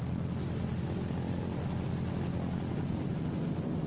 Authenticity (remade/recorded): recorded